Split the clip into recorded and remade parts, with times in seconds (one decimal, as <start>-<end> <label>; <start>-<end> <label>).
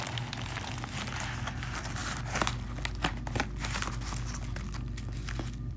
0.0-5.8 recorded